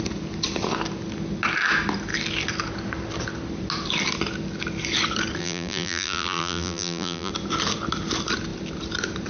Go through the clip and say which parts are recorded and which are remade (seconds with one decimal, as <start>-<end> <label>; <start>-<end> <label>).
0.0-5.4 recorded; 5.4-7.3 remade; 7.3-9.3 recorded